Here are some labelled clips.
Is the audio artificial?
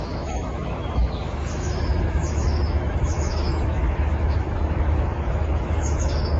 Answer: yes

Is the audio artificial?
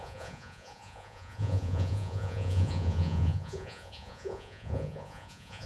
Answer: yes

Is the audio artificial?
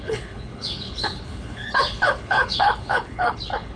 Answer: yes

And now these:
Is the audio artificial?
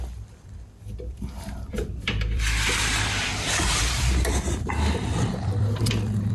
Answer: yes